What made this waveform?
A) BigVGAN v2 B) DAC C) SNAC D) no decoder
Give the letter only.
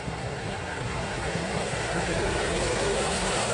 C